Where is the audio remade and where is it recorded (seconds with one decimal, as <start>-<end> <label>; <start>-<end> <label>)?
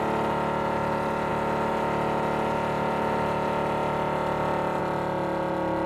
0.0-5.9 recorded